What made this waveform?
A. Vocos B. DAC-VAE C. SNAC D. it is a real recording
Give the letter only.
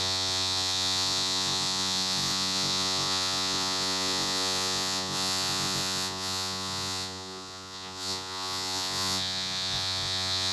A